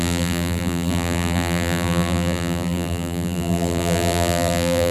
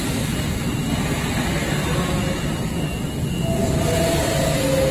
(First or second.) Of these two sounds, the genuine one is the second